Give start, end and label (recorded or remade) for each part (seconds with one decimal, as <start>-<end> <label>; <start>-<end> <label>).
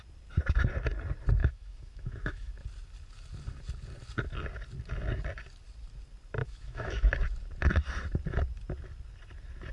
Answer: 0.0-1.4 recorded; 1.4-2.5 remade; 2.5-6.4 recorded; 6.4-7.1 remade; 7.1-9.7 recorded